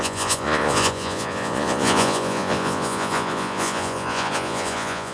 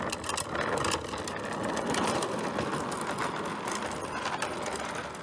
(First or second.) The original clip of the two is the second